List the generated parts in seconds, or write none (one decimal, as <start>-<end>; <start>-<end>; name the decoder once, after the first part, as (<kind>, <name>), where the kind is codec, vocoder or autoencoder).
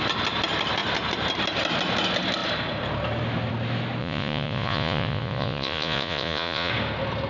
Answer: 4.0-6.7 (vocoder, Vocos)